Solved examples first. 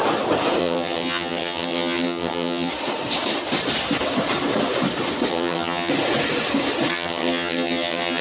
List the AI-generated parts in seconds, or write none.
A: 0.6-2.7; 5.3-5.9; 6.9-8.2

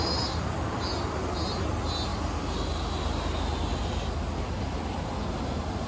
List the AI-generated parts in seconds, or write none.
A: none

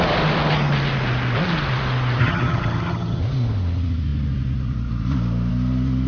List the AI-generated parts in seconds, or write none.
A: 2.2-3.2

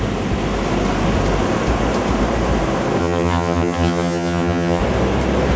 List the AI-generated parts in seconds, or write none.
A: 3.0-4.8

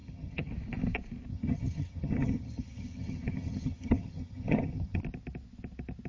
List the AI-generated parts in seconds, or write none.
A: 0.0-0.5; 1.3-5.0

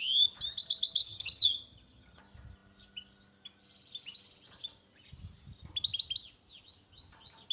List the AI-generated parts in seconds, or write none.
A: 1.0-2.2

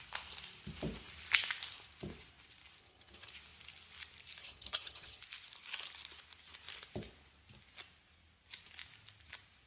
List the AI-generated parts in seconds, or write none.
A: 2.8-3.3; 4.4-5.2